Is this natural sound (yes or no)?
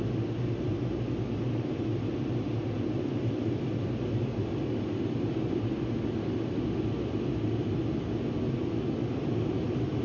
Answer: yes